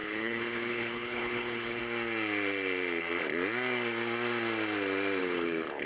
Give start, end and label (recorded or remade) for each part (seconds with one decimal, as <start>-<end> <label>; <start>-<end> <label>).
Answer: 0.0-1.8 remade; 1.8-5.2 recorded; 5.2-5.9 remade